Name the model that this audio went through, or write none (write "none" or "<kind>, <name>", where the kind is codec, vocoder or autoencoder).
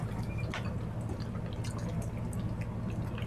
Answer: none